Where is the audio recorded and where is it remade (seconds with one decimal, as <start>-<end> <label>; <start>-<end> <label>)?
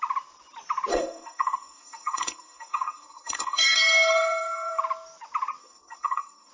0.0-0.9 recorded; 0.9-4.8 remade; 4.8-5.6 recorded; 5.6-6.5 remade